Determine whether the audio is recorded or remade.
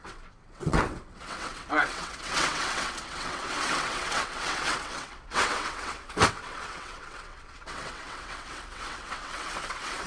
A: remade